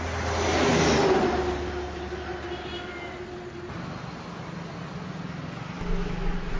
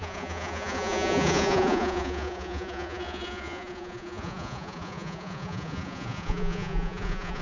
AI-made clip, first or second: second